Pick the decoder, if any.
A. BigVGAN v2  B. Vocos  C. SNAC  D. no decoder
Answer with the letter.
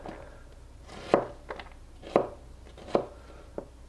D